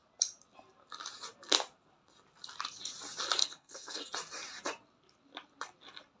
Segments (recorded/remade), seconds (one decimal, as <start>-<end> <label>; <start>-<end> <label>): 0.0-3.4 recorded; 3.4-4.0 remade; 4.0-6.2 recorded